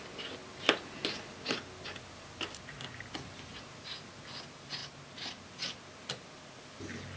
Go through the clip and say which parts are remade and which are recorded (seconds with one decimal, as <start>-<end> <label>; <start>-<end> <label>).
0.0-7.2 recorded